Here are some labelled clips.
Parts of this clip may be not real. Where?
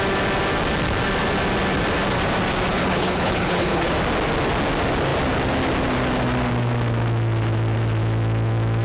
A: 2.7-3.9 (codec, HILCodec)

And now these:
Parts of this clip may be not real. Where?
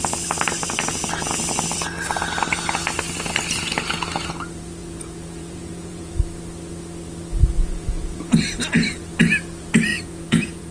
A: 0.9-1.4 (vocoder, Vocos); 4.8-6.1; 7.6-8.4; 9.9-10.7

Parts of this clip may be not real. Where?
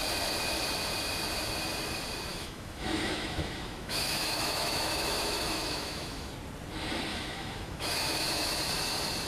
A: 2.3-6.3 (autoencoder, DAC-VAE); 7.1-8.7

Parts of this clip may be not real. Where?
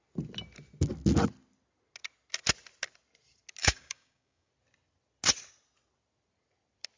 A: 3.6-4.5 (codec, DAC)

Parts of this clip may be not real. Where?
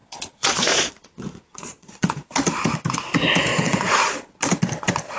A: 0.0-2.3 (vocoder, Vocos); 3.5-4.3